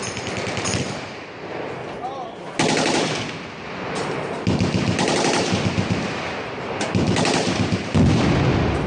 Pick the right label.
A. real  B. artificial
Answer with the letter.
A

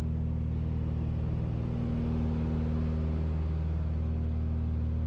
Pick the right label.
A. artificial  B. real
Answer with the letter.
B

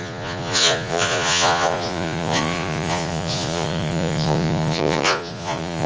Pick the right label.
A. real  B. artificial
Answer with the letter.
B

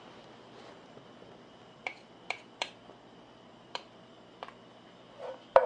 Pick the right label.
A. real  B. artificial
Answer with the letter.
B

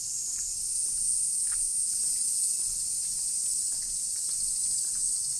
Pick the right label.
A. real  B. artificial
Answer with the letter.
A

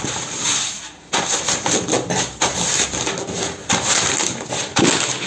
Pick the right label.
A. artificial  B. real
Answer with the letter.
B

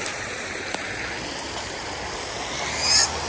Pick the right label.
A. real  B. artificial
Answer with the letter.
A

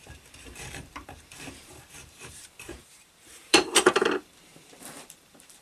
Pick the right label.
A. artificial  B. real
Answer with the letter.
A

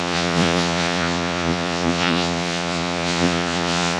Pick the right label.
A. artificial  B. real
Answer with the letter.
A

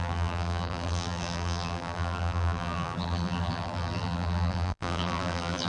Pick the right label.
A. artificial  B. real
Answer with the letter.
A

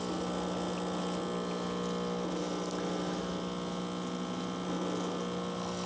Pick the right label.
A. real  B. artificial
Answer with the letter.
A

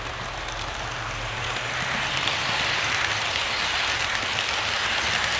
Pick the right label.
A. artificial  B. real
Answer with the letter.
B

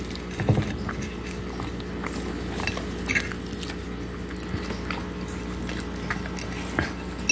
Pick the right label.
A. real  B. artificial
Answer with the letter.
A